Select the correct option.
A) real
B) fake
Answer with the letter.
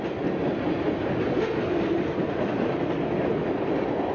A